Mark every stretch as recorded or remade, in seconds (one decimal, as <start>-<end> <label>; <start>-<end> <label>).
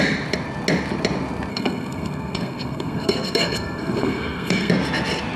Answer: 0.0-1.5 recorded; 1.5-4.7 remade; 4.7-5.4 recorded